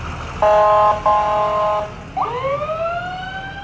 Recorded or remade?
recorded